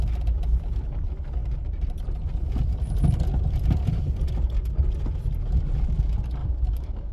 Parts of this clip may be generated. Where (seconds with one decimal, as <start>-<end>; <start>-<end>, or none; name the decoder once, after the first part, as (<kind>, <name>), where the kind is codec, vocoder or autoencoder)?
6.4-7.1 (codec, DAC)